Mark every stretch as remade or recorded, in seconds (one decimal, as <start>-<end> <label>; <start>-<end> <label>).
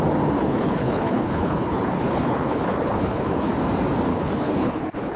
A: 0.0-0.4 recorded; 0.4-3.5 remade; 3.5-4.1 recorded; 4.1-5.2 remade